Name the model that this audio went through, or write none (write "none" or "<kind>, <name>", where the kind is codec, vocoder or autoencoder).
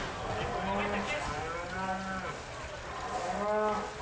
none